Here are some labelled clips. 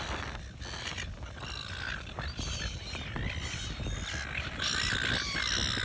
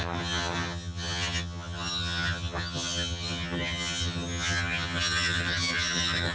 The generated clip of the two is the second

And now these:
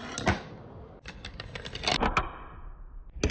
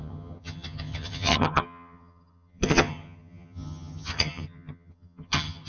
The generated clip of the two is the second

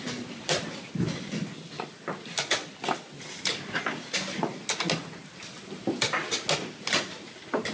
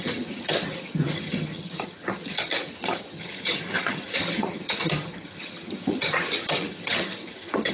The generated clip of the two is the second